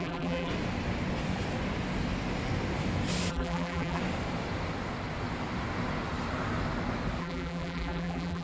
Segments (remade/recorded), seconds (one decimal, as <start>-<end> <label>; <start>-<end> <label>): 0.0-0.5 remade; 0.5-3.3 recorded; 3.3-4.0 remade; 4.0-7.2 recorded; 7.2-8.4 remade